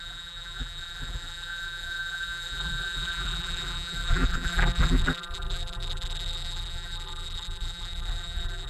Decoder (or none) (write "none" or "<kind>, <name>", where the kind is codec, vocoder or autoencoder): vocoder, BigVGAN v2